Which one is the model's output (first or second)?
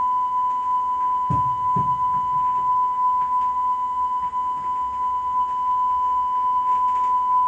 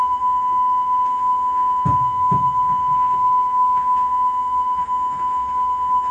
second